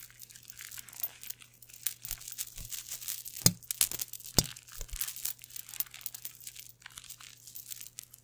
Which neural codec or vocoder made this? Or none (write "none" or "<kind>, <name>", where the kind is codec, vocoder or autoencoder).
none